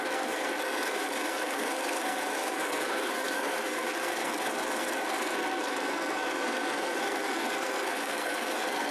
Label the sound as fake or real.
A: fake